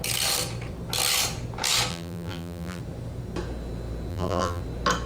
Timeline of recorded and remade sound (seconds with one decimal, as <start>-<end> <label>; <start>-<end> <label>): 0.0-1.9 recorded; 1.9-2.8 remade; 2.8-4.1 recorded; 4.1-4.6 remade; 4.6-5.1 recorded